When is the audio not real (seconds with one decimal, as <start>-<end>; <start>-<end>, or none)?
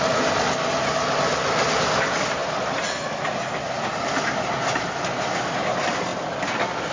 none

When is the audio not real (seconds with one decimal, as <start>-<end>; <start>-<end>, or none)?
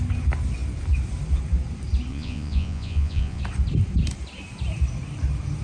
2.1-3.4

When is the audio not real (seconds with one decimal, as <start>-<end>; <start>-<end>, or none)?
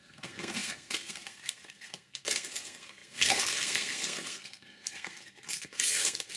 0.0-6.4